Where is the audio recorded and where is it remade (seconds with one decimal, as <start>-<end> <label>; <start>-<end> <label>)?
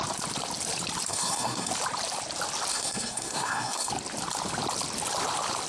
0.0-1.1 recorded; 1.1-1.7 remade; 1.7-2.7 recorded; 2.7-3.9 remade; 3.9-5.7 recorded